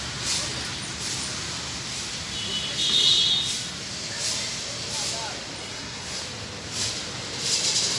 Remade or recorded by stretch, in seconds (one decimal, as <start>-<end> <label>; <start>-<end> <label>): 0.0-5.6 recorded; 5.6-6.2 remade; 6.2-8.0 recorded